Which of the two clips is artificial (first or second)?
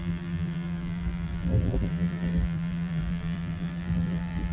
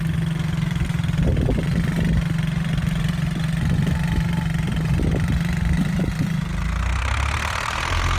first